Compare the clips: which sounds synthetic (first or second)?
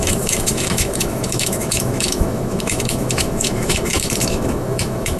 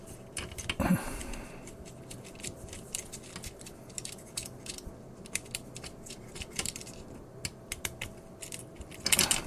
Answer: first